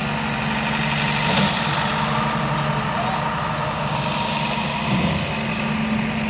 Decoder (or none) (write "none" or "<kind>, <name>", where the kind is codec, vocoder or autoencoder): none